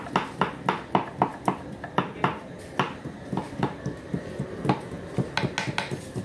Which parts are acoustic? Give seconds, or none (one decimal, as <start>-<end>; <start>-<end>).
0.0-6.2